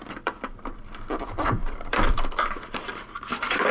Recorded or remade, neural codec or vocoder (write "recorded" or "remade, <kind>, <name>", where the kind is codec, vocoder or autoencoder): remade, vocoder, BigVGAN v2